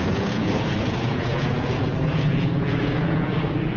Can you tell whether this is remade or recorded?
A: remade